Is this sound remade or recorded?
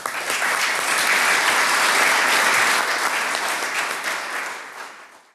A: recorded